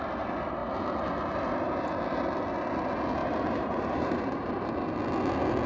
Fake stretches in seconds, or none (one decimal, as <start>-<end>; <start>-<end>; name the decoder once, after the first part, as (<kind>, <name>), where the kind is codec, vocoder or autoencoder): 3.2-4.7 (vocoder, BigVGAN v2)